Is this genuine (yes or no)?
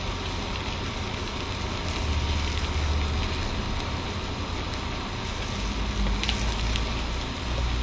yes